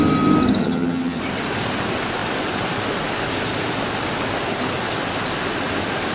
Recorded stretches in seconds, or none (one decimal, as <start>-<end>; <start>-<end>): 0.0-0.6; 1.2-6.1